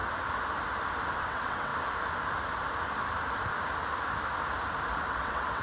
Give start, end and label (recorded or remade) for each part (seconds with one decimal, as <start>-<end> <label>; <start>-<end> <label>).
0.0-1.2 recorded; 1.2-1.7 remade; 1.7-5.1 recorded; 5.1-5.6 remade